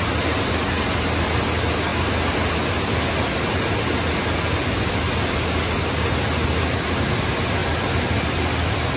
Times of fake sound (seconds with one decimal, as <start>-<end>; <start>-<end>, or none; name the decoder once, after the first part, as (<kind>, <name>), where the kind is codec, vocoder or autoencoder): none